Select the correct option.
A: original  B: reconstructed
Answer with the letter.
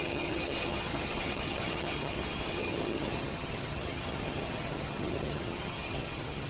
B